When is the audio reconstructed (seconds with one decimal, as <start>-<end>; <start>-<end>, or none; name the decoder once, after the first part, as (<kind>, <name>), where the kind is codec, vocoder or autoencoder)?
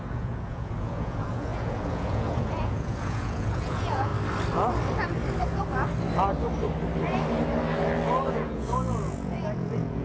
0.0-4.1 (vocoder, Vocos); 8.3-10.0